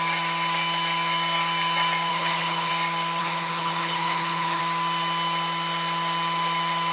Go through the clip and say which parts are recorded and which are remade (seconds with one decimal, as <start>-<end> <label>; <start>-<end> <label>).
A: 0.0-2.1 recorded; 2.1-2.7 remade; 2.7-3.2 recorded; 3.2-4.6 remade; 4.6-6.9 recorded